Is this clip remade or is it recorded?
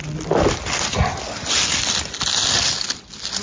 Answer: recorded